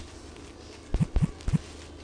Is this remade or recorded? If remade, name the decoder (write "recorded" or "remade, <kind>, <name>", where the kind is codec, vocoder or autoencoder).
recorded